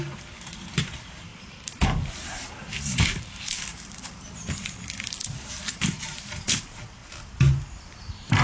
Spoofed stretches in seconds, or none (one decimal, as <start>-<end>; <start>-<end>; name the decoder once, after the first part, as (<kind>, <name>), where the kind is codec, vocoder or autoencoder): 0.0-7.0 (vocoder, BigVGAN v2); 7.6-8.4